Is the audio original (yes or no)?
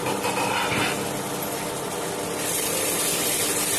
yes